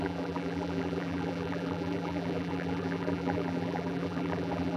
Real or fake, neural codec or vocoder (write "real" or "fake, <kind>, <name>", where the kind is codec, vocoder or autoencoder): fake, vocoder, BigVGAN v2